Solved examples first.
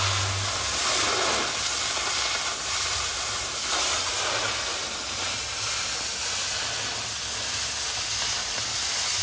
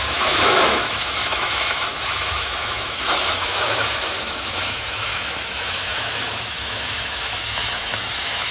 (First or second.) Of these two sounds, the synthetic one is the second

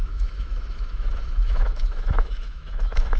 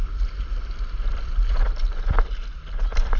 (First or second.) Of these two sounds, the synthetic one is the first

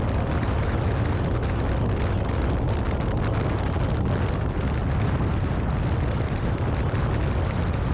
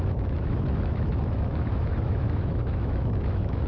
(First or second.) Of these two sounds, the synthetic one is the second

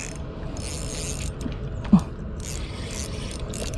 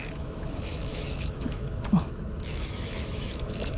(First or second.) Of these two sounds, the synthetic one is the second